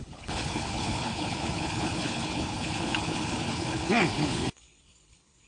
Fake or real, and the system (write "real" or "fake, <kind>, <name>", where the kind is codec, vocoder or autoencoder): fake, codec, HILCodec